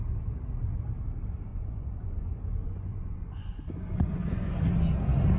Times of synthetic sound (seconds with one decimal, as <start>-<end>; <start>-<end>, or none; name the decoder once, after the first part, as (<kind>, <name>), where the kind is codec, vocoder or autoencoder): 1.5-4.7 (vocoder, Vocos)